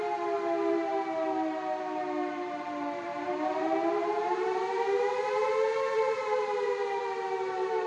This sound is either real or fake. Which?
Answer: fake